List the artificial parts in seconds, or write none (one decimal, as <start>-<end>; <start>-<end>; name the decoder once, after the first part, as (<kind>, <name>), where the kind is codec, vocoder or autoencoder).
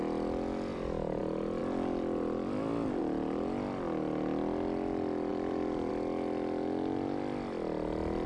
0.7-1.2 (vocoder, BigVGAN v2); 1.6-3.0; 5.3-5.9